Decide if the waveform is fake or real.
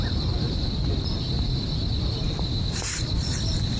real